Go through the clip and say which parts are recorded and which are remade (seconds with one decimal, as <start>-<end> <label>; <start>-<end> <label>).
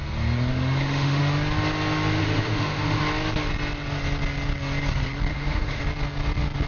0.0-0.5 recorded; 0.5-1.2 remade; 1.2-2.2 recorded; 2.2-3.0 remade; 3.0-5.3 recorded; 5.3-5.8 remade; 5.8-6.7 recorded